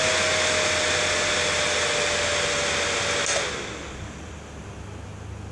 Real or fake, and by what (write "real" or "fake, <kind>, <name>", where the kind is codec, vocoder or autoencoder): real